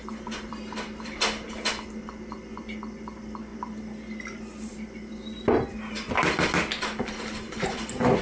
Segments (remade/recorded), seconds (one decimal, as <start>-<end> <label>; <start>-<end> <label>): 0.0-8.2 recorded